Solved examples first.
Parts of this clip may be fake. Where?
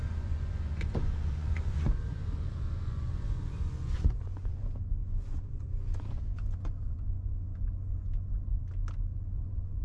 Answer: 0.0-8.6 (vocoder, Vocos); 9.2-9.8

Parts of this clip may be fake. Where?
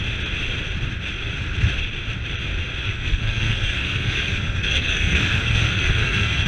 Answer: 2.8-6.5 (codec, SNAC)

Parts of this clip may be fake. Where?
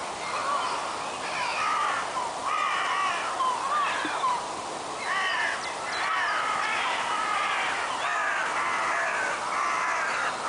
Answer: none